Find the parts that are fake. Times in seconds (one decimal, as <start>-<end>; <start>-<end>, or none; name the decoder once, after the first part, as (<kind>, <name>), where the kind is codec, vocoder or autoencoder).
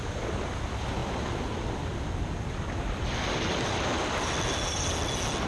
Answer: none